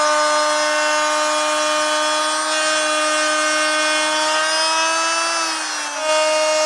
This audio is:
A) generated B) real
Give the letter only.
B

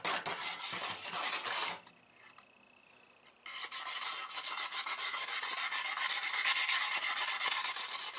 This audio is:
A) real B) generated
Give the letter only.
A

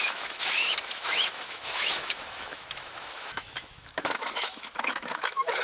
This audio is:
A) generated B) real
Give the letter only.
A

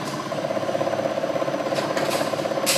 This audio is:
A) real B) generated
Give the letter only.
A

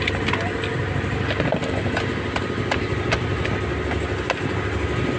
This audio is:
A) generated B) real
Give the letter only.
B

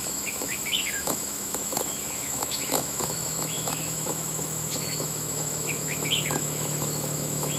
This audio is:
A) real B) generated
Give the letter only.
B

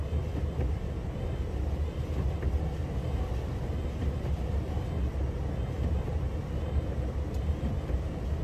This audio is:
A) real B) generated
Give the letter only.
A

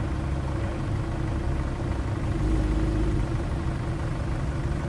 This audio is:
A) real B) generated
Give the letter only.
A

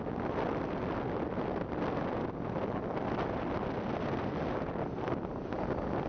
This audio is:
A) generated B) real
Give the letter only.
B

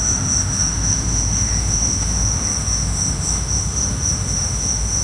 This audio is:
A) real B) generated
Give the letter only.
B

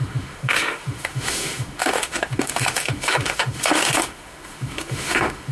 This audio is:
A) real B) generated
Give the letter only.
B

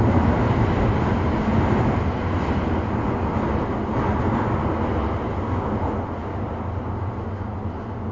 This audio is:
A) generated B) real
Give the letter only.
B